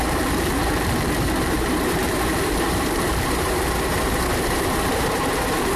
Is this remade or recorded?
remade